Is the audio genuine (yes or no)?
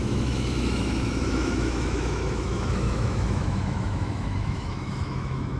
no